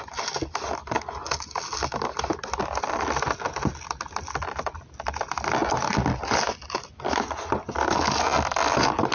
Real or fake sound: real